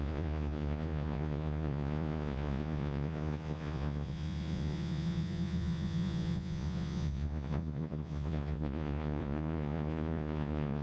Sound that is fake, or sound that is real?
fake